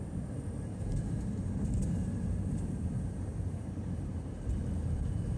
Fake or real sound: fake